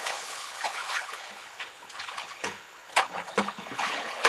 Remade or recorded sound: remade